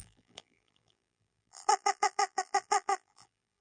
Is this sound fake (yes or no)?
yes